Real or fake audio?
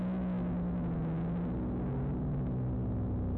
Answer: real